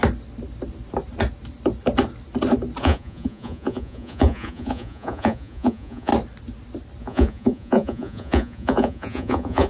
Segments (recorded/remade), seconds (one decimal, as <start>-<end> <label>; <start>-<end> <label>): 0.0-2.8 recorded; 2.8-6.1 remade; 6.1-7.0 recorded; 7.0-9.7 remade